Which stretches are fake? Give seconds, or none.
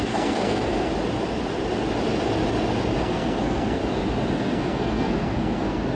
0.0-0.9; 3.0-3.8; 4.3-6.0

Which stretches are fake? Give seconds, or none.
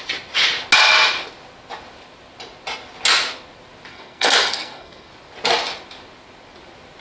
3.9-5.1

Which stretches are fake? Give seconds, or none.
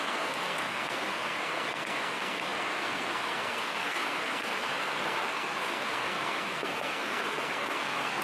0.0-8.2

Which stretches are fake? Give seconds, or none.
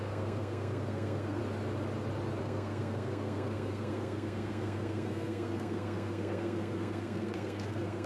0.0-1.4; 2.4-8.1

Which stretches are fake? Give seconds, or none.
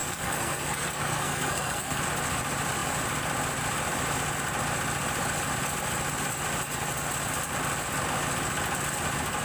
0.0-2.0